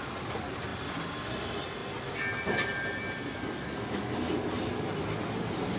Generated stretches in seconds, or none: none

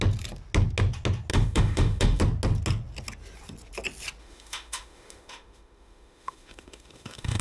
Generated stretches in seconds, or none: 1.3-2.2; 4.2-7.4

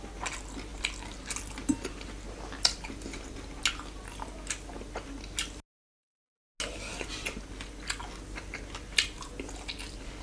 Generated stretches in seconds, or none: none

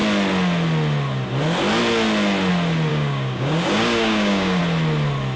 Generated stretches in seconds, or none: 2.9-4.6

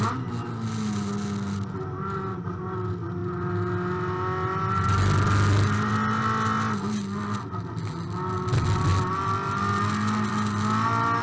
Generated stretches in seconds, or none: none

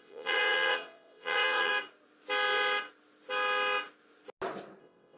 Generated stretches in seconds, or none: 0.0-1.7; 4.8-5.2

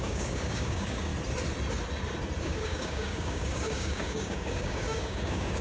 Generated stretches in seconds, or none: 0.0-1.1; 2.4-5.6